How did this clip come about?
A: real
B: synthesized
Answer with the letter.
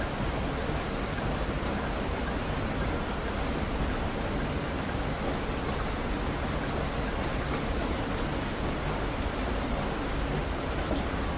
A